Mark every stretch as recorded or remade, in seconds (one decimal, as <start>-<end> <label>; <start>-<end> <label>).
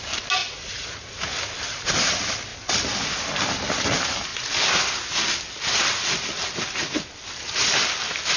0.0-0.4 recorded; 0.4-1.4 remade; 1.4-8.4 recorded